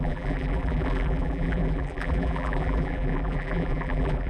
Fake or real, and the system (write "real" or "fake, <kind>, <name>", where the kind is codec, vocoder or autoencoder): fake, vocoder, BigVGAN v2